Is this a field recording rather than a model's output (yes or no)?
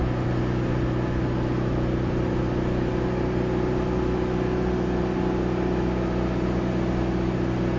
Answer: yes